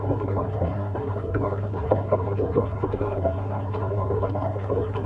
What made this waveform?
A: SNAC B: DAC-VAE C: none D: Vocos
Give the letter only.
A